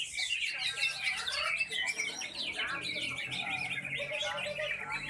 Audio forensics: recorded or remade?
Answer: recorded